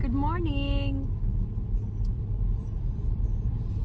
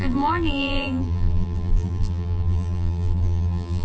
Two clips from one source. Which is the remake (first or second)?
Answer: second